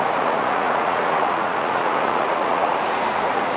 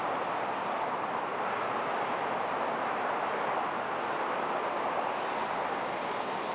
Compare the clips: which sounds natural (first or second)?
second